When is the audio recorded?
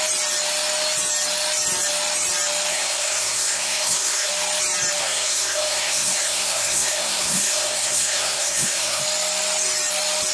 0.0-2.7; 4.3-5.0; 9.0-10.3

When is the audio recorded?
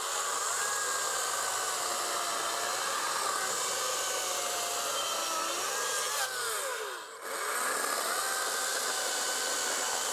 0.0-10.1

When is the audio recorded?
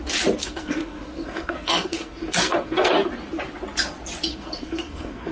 0.0-0.4; 2.9-4.3